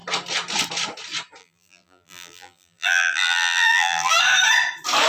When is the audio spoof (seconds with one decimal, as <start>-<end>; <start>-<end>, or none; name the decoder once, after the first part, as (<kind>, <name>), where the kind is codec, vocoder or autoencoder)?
1.4-4.1 (vocoder, BigVGAN v2)